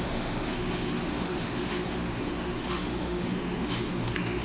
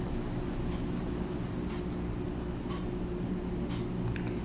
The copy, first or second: first